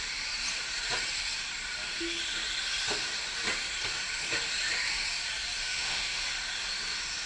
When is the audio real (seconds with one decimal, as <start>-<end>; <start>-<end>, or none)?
0.0-5.6; 6.2-7.3